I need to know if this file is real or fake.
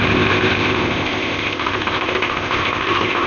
fake